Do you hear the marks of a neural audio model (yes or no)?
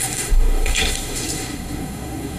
yes